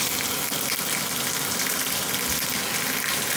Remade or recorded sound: recorded